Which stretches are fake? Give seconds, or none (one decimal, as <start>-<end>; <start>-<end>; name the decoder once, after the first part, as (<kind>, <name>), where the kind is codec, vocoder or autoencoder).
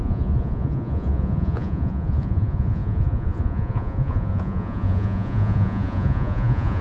0.0-6.8 (vocoder, Vocos)